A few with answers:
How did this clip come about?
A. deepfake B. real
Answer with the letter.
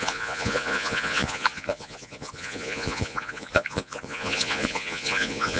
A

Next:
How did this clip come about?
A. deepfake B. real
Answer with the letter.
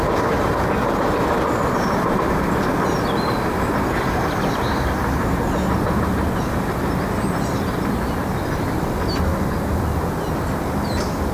B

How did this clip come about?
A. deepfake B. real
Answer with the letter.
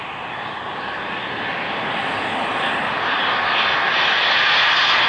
B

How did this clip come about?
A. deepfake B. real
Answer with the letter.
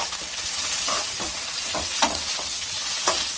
A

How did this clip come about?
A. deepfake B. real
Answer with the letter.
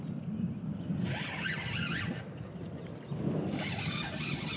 B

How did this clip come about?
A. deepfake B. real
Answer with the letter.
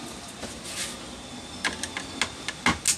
B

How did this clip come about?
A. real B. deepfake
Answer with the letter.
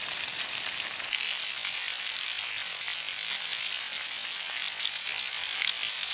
A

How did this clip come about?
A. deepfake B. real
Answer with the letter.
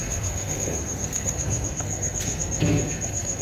A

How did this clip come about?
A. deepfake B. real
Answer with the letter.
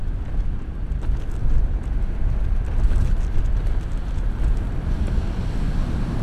B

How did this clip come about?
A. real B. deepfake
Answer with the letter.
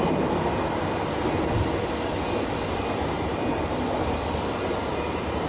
A